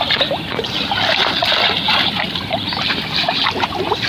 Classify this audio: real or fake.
real